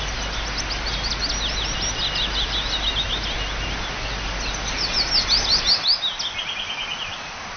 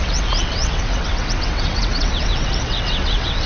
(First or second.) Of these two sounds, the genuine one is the first